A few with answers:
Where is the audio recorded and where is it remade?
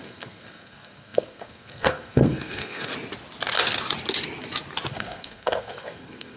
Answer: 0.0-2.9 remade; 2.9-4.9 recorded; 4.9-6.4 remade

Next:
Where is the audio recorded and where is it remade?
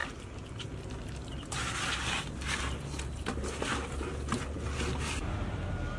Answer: 0.0-6.0 recorded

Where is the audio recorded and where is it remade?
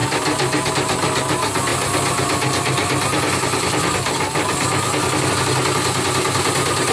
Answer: 0.0-6.9 recorded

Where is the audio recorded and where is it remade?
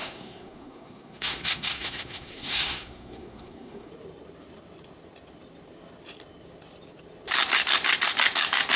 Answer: 0.0-3.9 remade; 3.9-8.8 recorded